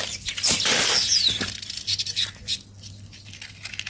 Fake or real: real